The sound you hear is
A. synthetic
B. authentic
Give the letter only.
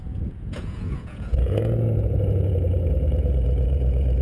A